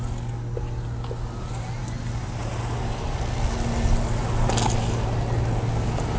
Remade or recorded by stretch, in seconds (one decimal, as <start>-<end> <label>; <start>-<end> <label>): 0.0-6.2 recorded